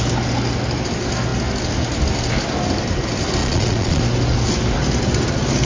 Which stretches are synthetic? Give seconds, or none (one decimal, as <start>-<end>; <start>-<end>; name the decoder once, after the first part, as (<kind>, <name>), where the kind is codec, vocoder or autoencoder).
3.4-4.0 (vocoder, Vocos)